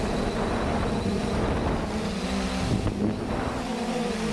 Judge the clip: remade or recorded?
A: recorded